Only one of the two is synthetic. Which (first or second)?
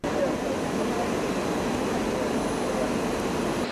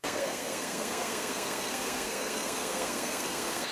second